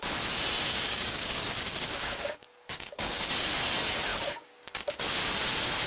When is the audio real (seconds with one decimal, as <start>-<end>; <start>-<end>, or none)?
0.0-0.7; 3.3-4.1; 5.0-5.9